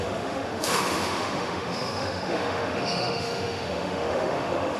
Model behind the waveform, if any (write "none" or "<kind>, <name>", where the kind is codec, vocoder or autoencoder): autoencoder, DAC-VAE